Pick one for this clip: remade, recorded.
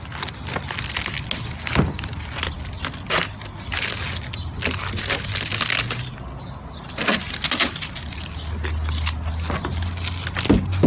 recorded